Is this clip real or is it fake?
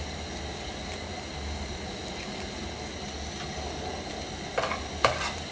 real